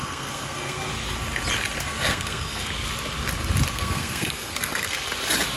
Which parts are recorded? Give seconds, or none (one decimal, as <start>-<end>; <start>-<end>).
0.9-1.8; 2.7-3.7; 5.0-5.6